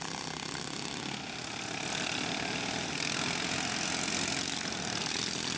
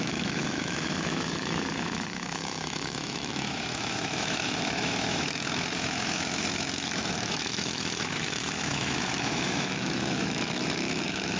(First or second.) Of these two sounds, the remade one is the second